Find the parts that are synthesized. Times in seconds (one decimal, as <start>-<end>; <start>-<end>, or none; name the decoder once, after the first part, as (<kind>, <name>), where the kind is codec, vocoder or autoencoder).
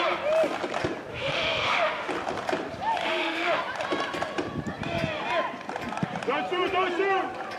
1.1-2.1 (autoencoder, DAC-VAE); 3.0-3.6